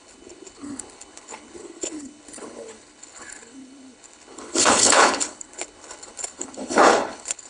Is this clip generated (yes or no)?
yes